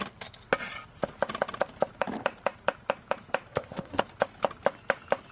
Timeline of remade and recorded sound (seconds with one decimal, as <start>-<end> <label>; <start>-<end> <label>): 0.0-3.5 recorded; 3.5-4.0 remade; 4.0-5.3 recorded